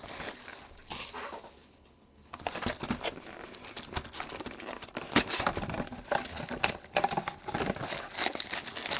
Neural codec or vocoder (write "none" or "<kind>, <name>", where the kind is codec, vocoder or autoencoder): none